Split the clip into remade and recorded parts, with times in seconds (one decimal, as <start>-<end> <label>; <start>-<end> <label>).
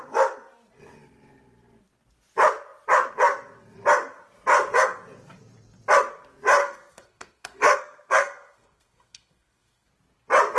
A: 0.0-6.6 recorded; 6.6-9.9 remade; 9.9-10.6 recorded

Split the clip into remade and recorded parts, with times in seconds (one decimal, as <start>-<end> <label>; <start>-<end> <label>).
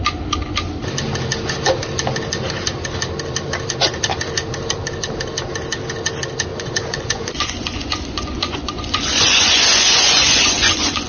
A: 0.0-6.5 recorded; 6.5-11.1 remade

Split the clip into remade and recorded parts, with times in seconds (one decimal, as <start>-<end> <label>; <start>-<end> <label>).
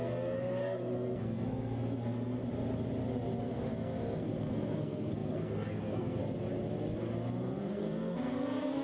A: 0.0-2.4 remade; 2.4-3.4 recorded; 3.4-6.2 remade; 6.2-7.6 recorded; 7.6-8.8 remade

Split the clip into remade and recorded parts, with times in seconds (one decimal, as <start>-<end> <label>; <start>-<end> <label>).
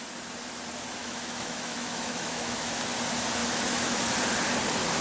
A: 0.0-1.0 recorded; 1.0-2.7 remade; 2.7-3.4 recorded; 3.4-4.0 remade; 4.0-5.0 recorded